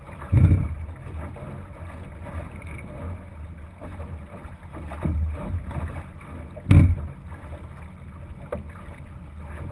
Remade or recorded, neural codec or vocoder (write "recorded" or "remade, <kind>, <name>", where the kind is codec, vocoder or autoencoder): recorded